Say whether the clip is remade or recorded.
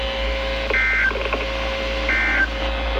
recorded